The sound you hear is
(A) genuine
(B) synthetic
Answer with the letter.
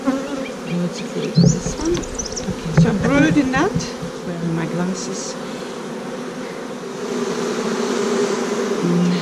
A